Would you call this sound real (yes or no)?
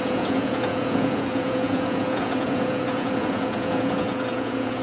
no